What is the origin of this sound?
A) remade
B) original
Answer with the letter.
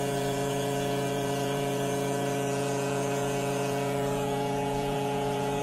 A